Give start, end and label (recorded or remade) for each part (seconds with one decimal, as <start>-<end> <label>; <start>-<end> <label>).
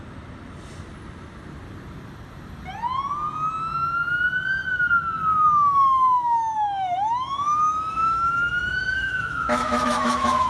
0.0-5.3 recorded; 5.3-10.5 remade